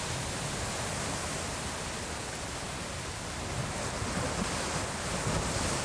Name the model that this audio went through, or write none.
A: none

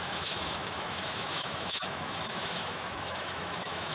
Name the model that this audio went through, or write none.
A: autoencoder, DAC-VAE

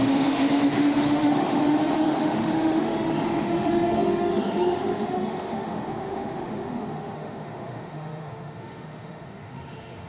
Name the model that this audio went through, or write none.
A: autoencoder, DAC-VAE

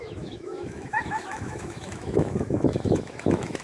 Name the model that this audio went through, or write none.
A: autoencoder, DAC-VAE